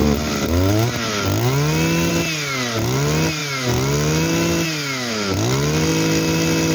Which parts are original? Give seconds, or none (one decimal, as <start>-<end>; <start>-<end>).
0.0-6.7